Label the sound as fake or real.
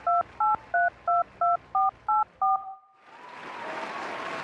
real